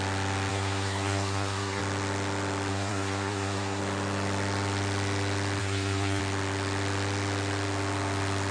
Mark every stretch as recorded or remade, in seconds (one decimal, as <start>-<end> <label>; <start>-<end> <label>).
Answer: 0.0-0.5 recorded; 0.5-1.8 remade; 1.8-2.7 recorded; 2.7-3.8 remade; 3.8-5.6 recorded; 5.6-6.2 remade; 6.2-8.5 recorded